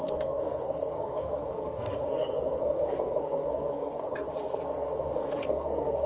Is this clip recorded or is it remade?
remade